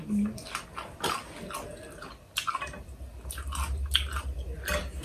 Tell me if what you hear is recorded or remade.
recorded